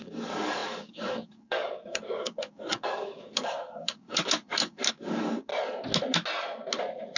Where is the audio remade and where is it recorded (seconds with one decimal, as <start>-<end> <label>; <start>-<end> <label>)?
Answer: 0.0-5.5 remade; 5.5-7.2 recorded